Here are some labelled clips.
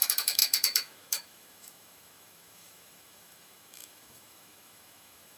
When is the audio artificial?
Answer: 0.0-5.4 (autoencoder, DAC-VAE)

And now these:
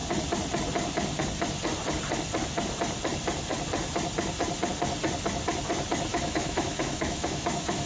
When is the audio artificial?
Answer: 6.1-7.9 (autoencoder, DAC-VAE)

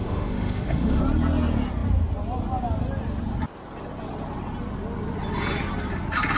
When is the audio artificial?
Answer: 0.0-1.0 (autoencoder, DAC-VAE)

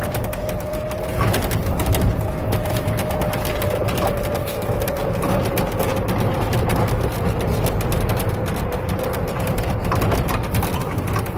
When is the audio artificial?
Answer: 2.3-3.2 (autoencoder, DAC-VAE); 4.4-4.9

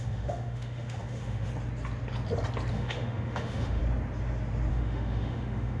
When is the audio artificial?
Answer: 0.0-1.5 (autoencoder, DAC-VAE); 2.7-3.8; 4.7-5.8

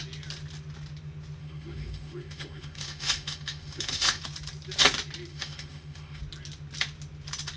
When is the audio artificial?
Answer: 1.4-4.2 (autoencoder, DAC-VAE); 5.3-6.2

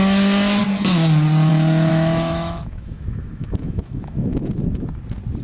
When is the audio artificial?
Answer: 1.9-4.5 (autoencoder, DAC-VAE)

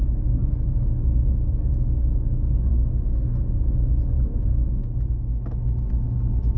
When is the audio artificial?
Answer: 2.7-3.4 (autoencoder, DAC-VAE)